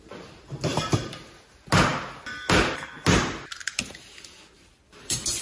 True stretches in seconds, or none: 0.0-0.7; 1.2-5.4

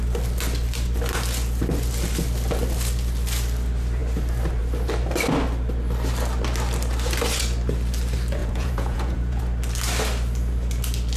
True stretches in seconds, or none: 0.0-8.4; 9.4-11.2